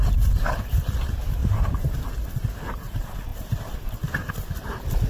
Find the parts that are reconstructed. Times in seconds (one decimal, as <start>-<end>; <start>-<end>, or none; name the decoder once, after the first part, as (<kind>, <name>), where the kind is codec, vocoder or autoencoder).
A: 1.4-2.1 (vocoder, BigVGAN v2); 3.3-4.3

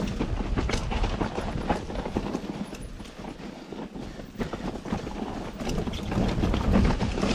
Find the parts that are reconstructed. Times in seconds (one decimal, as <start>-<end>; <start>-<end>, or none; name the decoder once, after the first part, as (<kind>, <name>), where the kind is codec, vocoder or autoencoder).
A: none

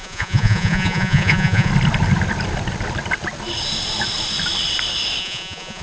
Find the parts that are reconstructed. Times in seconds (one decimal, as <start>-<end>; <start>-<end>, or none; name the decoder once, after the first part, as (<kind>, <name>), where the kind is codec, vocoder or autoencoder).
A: 0.0-1.7 (vocoder, Vocos); 5.2-5.8

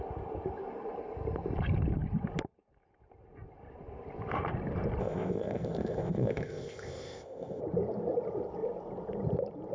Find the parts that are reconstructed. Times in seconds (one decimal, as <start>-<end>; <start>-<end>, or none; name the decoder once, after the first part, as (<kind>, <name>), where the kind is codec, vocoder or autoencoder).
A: 5.0-7.6 (codec, ZipCodec)